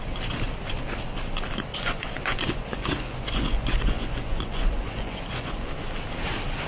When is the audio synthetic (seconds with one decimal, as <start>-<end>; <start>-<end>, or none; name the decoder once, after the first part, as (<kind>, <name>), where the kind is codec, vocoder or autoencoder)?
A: 1.7-5.7 (vocoder, Vocos)